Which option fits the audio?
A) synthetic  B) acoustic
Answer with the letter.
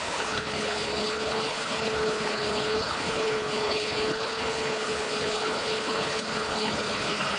A